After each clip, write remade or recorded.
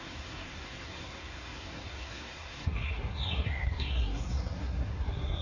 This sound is remade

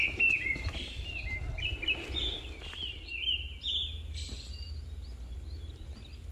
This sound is recorded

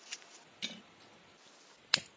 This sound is recorded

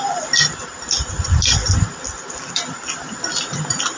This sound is recorded